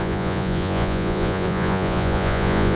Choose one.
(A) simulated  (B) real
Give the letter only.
A